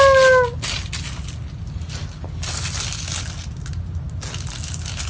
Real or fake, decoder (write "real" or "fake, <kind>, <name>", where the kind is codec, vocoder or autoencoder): real